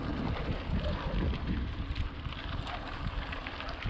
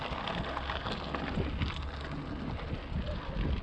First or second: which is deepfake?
first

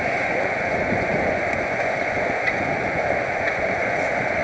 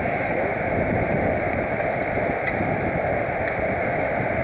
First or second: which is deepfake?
first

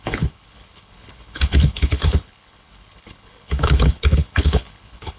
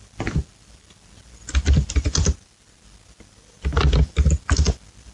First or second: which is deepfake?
first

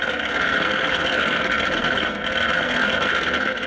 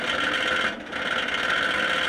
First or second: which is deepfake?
first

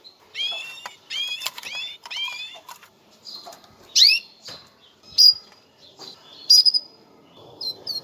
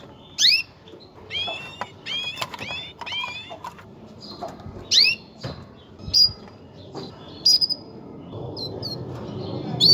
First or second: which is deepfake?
first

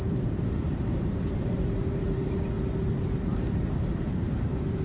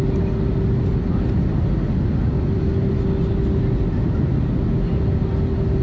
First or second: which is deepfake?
first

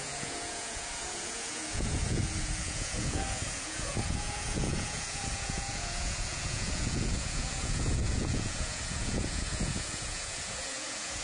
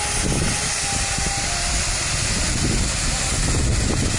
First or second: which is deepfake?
first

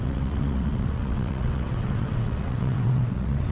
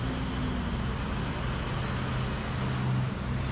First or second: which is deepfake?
first